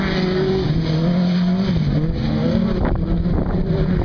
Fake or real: real